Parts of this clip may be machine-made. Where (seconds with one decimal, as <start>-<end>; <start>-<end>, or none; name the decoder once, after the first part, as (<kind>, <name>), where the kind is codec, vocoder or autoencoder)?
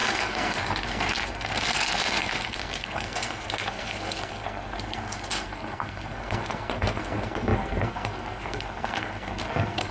0.0-9.9 (codec, SNAC)